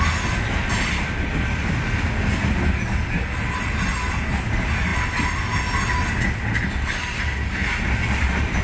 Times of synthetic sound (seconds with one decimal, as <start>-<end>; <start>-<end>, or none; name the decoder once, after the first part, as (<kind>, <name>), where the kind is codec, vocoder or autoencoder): none